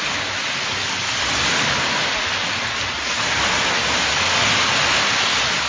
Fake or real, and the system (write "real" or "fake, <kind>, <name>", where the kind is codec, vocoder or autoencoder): real